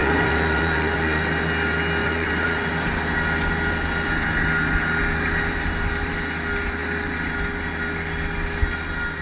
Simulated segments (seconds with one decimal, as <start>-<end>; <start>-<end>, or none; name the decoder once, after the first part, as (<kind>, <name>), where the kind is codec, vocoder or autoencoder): 0.0-1.2 (vocoder, Vocos); 2.0-2.7